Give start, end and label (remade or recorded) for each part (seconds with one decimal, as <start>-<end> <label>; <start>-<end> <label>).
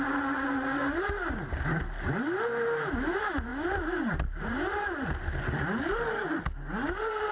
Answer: 0.0-7.3 recorded